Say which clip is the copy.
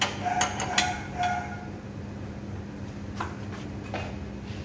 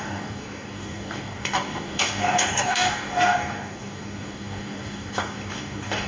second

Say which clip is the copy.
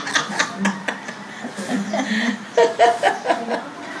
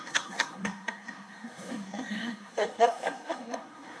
second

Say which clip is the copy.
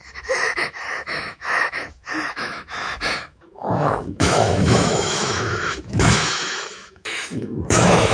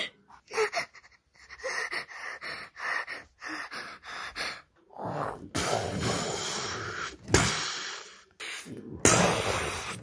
first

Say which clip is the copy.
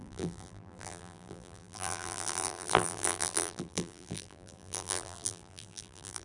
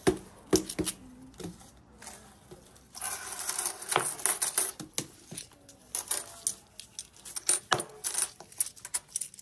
first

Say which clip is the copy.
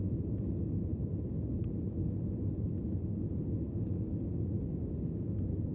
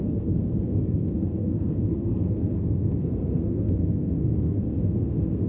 second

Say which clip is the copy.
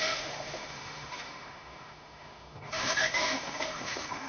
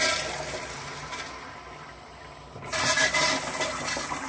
first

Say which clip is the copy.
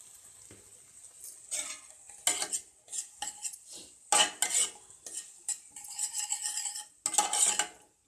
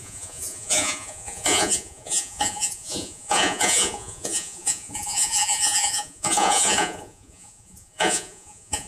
second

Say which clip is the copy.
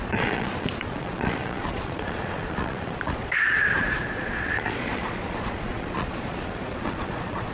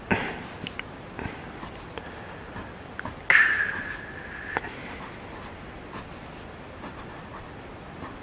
first